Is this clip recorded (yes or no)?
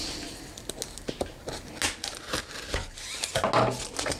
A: yes